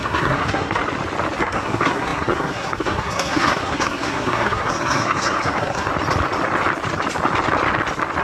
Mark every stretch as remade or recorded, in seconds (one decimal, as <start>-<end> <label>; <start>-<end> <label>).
0.0-0.8 remade; 0.8-1.4 recorded; 1.4-5.9 remade; 5.9-8.2 recorded